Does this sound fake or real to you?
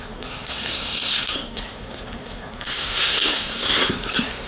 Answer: fake